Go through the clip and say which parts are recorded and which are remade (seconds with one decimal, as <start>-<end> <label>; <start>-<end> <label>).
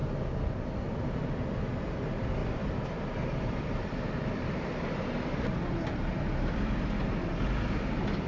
0.0-0.7 remade; 0.7-2.4 recorded; 2.4-7.0 remade; 7.0-8.3 recorded